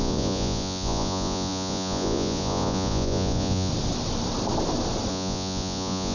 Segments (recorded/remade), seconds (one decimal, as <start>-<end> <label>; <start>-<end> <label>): 0.0-3.7 remade; 3.7-5.1 recorded; 5.1-6.1 remade